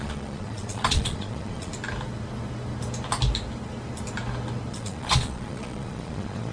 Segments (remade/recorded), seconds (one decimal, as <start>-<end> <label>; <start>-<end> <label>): 0.0-1.7 remade; 1.7-4.7 recorded; 4.7-6.5 remade